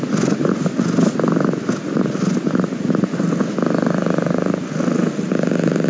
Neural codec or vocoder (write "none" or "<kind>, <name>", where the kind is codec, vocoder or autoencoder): none